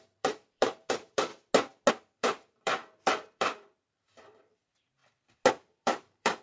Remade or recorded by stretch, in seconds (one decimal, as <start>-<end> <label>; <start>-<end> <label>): 0.0-1.3 remade; 1.3-1.9 recorded; 1.9-5.0 remade; 5.0-5.5 recorded; 5.5-6.4 remade